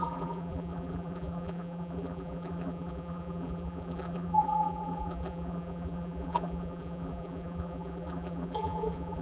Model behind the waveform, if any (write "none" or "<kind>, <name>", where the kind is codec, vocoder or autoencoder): vocoder, BigVGAN v2